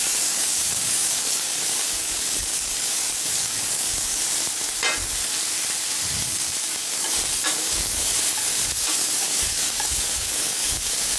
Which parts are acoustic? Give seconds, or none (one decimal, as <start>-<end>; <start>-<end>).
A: 4.2-6.3